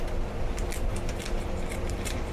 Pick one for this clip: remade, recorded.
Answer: recorded